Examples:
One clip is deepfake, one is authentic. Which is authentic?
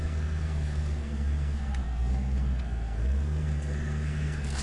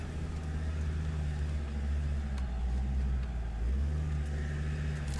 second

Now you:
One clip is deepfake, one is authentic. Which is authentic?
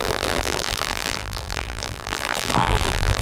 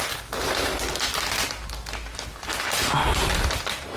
second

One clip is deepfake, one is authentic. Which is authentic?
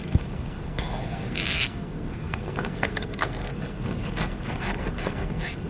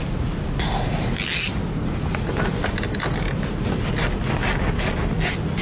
second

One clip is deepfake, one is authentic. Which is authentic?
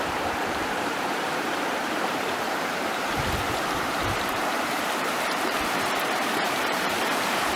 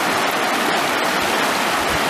second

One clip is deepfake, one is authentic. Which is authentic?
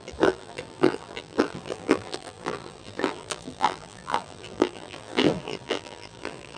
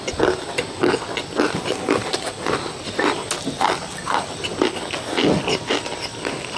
second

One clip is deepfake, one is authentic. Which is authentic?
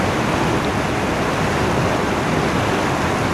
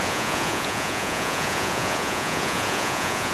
first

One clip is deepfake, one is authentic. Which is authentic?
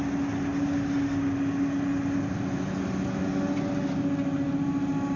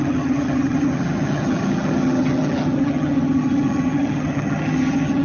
first